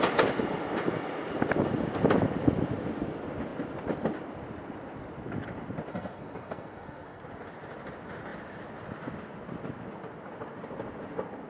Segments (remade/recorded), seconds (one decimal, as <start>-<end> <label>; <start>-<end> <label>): 0.0-5.9 recorded; 5.9-7.2 remade; 7.2-11.5 recorded